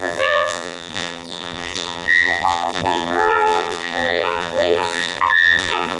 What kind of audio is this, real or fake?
fake